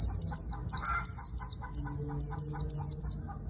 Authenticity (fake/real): real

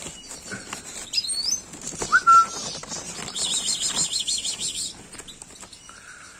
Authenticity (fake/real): real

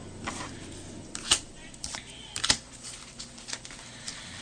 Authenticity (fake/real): real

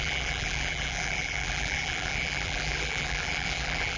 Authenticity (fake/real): fake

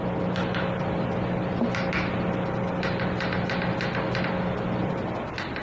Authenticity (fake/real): real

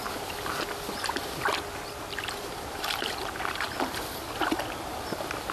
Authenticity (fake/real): real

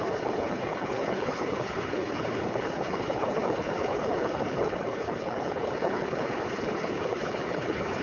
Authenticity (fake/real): fake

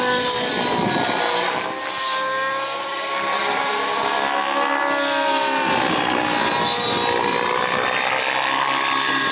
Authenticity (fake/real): real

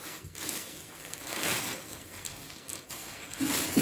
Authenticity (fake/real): fake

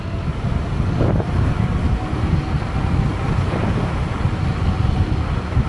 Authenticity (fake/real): real